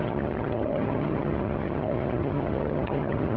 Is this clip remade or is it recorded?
remade